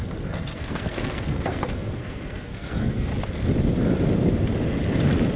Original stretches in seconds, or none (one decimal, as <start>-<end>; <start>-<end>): 3.1-5.4